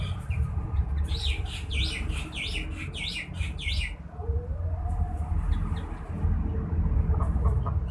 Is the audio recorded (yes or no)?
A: yes